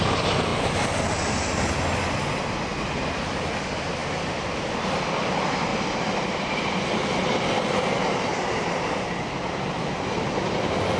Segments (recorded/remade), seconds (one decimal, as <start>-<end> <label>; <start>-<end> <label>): 0.0-5.7 recorded; 5.7-6.9 remade; 6.9-11.0 recorded